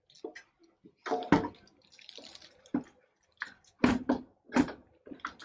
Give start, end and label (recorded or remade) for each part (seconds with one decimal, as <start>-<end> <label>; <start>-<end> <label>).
0.0-5.4 recorded